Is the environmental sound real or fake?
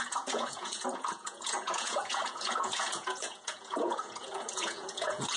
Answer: fake